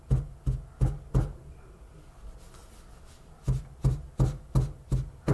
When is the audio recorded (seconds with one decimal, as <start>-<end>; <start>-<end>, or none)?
0.0-5.3